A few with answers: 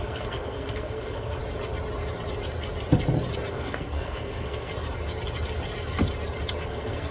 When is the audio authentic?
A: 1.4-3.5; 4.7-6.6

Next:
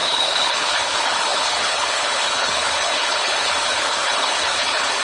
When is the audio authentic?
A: none

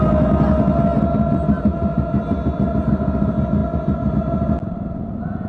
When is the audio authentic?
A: 0.0-5.5

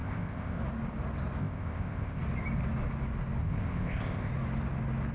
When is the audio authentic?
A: 0.6-1.4; 2.2-3.4; 4.3-5.1